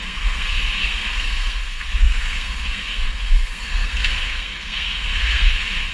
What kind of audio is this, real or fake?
fake